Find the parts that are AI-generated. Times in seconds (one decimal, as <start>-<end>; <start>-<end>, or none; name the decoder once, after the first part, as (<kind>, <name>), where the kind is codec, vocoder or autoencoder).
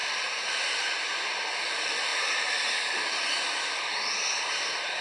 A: 0.0-0.6 (vocoder, BigVGAN v2)